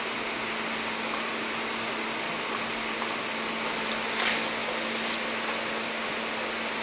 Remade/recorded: recorded